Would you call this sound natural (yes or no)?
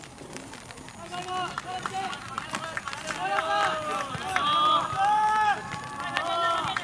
yes